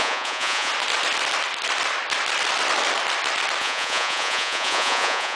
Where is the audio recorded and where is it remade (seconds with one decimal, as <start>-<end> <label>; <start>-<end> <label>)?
0.0-0.7 remade; 0.7-3.6 recorded; 3.6-5.4 remade